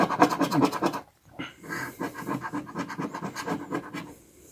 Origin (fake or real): real